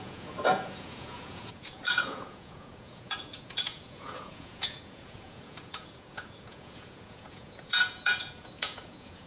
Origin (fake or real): fake